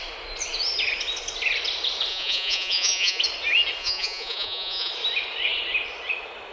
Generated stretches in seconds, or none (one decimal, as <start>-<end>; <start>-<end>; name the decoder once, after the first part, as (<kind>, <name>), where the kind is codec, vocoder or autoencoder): 2.1-3.2 (vocoder, Vocos); 3.8-4.9